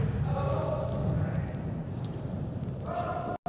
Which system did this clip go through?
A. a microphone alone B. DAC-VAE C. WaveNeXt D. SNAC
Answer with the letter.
A